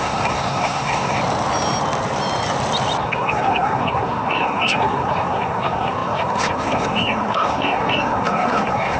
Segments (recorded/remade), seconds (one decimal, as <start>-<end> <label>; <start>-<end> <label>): 0.0-1.2 remade; 1.2-3.0 recorded; 3.0-9.0 remade